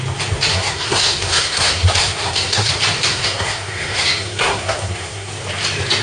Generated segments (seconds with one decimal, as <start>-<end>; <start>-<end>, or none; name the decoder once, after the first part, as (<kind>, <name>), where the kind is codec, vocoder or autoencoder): 0.5-2.7 (codec, SNAC); 3.1-5.3

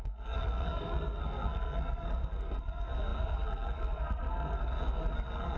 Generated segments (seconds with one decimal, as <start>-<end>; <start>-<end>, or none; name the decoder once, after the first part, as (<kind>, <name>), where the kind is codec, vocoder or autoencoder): 0.0-5.6 (codec, SNAC)

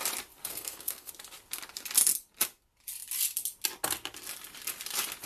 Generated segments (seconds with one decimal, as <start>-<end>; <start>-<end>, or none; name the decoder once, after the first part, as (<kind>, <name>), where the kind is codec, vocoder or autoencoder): 0.4-1.1 (codec, SNAC)